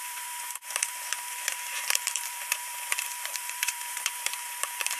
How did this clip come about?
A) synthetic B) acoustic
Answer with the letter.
A